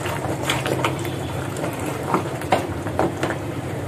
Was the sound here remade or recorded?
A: remade